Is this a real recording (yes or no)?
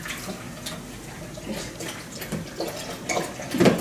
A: yes